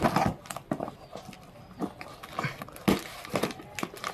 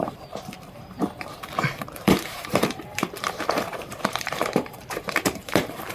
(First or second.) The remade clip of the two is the second